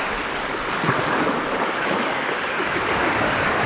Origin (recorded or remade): remade